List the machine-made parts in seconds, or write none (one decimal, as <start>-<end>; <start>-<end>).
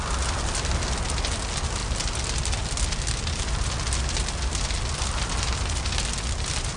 none